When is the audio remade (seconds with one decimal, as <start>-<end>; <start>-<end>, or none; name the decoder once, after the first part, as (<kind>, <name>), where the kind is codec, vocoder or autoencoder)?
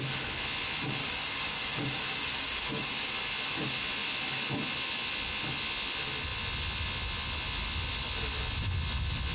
1.0-3.1 (codec, DAC)